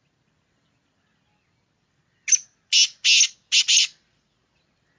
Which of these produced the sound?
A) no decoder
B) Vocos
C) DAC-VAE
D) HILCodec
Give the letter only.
A